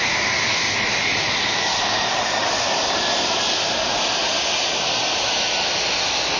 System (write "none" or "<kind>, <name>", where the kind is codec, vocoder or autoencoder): none